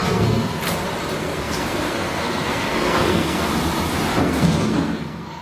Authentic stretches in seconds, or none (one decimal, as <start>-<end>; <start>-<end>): 0.6-1.2; 3.5-4.2